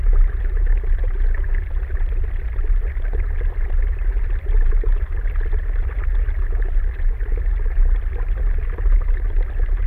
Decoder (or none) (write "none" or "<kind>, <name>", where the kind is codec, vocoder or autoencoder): none